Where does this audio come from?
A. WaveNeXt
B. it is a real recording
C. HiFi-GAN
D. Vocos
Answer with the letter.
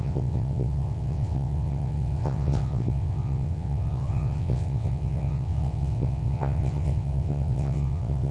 A